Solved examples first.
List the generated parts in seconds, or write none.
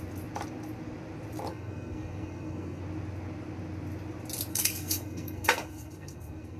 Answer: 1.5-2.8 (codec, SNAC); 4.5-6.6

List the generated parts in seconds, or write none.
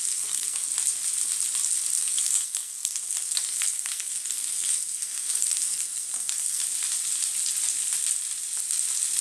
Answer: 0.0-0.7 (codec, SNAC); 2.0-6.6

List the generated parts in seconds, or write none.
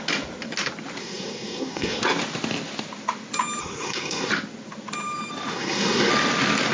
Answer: 1.0-2.0 (codec, SNAC); 3.6-4.3; 5.5-6.1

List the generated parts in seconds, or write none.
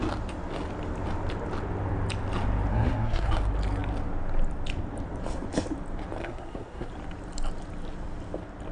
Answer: 2.7-3.3 (codec, SNAC); 6.2-6.9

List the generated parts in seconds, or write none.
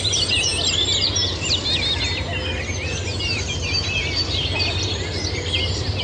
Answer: none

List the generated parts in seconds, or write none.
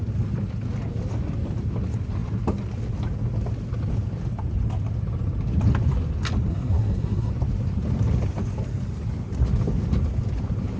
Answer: 6.5-7.3 (codec, SNAC)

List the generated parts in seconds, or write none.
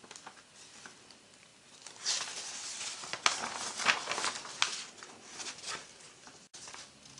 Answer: none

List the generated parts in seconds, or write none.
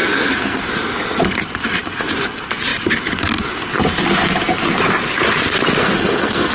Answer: 0.0-0.6 (codec, SNAC); 5.8-6.5